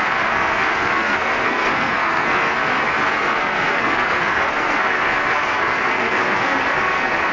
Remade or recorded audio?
remade